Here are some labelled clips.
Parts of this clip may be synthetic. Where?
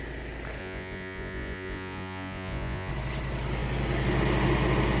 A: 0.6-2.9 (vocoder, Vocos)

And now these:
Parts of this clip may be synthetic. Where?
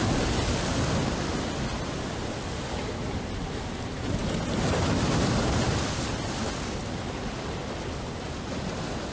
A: none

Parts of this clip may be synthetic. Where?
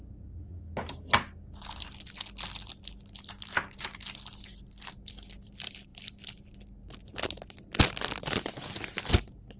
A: 0.0-0.6 (vocoder, Vocos)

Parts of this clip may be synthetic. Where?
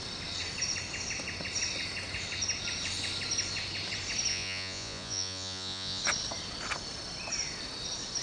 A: 4.3-6.0 (vocoder, Vocos)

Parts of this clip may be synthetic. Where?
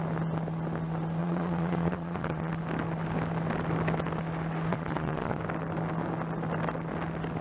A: 1.2-2.5 (vocoder, Vocos); 4.7-5.4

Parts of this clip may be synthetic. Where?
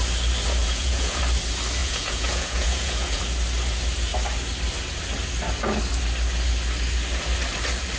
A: 0.6-1.2 (vocoder, Vocos); 1.8-3.2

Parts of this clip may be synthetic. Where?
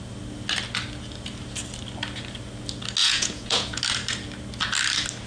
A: 3.0-3.8 (vocoder, Vocos)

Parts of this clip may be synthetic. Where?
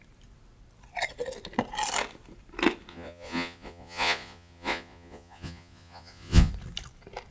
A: 2.9-6.5 (vocoder, Vocos)